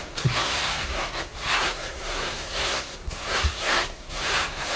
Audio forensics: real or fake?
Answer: fake